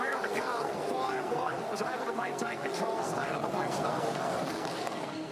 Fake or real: fake